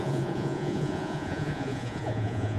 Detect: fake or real fake